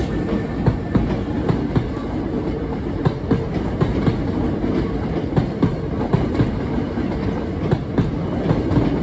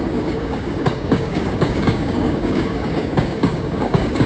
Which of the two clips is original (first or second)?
first